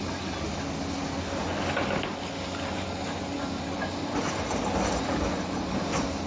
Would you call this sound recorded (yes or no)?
yes